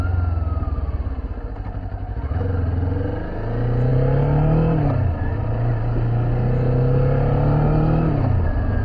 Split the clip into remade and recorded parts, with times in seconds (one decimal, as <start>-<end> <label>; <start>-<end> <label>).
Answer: 0.0-8.8 recorded